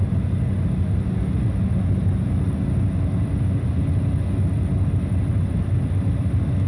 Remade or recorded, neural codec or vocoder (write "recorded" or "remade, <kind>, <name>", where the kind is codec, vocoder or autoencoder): recorded